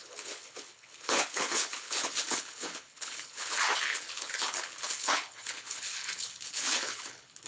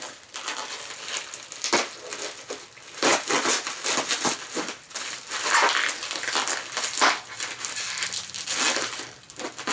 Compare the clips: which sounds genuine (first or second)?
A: second